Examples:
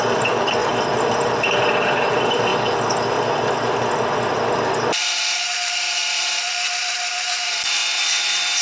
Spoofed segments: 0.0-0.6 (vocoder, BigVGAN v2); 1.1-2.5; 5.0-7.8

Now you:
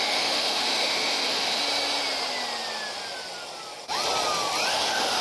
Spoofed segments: 0.0-1.6 (autoencoder, DAC-VAE); 4.7-5.2